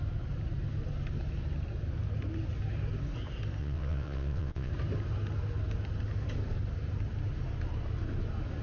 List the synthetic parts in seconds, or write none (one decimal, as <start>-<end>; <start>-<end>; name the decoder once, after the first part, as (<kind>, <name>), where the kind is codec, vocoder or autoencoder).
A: 3.6-4.7 (vocoder, WaveNeXt)